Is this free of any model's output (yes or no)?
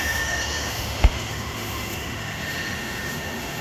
no